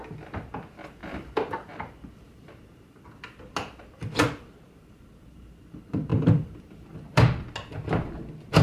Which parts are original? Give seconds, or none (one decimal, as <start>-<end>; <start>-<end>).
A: 0.0-1.0; 2.5-6.1; 7.4-8.6